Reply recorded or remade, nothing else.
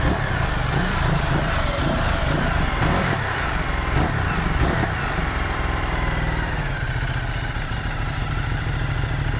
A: remade